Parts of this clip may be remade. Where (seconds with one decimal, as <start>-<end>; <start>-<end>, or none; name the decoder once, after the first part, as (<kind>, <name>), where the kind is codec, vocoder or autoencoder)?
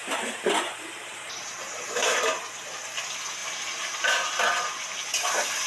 0.0-2.4 (vocoder, BigVGAN v2); 3.4-4.4